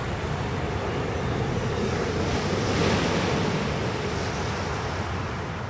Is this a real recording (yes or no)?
yes